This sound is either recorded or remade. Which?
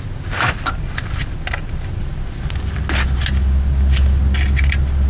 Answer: recorded